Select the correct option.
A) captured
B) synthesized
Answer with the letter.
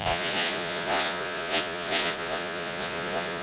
B